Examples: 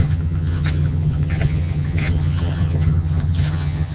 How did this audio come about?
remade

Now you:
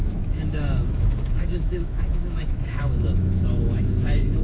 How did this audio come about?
remade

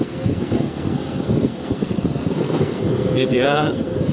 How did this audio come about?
remade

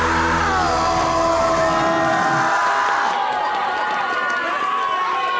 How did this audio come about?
recorded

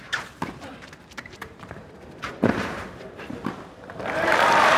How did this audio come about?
remade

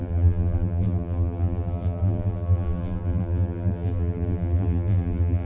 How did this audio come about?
remade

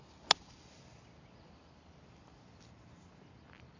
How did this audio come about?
recorded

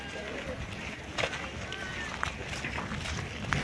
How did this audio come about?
recorded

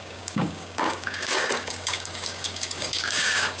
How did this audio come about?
remade